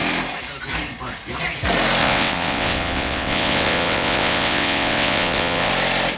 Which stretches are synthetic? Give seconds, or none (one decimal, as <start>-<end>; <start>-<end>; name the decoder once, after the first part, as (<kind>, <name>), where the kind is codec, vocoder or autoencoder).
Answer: 2.0-5.7 (vocoder, WaveNeXt)